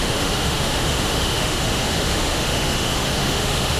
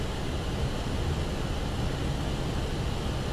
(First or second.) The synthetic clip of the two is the first